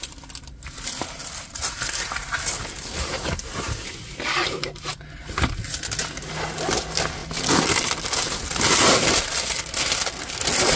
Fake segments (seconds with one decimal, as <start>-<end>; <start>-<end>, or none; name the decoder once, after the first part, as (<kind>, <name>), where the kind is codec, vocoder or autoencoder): none